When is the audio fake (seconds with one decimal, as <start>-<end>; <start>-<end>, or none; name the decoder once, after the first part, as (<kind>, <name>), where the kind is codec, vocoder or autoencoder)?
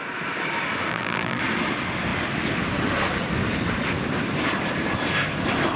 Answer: 0.9-1.4 (vocoder, BigVGAN v2)